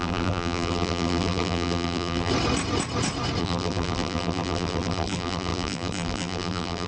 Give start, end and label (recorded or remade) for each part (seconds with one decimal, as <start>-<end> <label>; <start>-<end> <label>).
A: 0.0-2.3 remade; 2.3-3.4 recorded; 3.4-6.9 remade